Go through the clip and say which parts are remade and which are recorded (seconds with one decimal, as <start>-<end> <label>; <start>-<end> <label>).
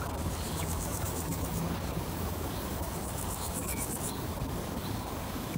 0.0-5.6 remade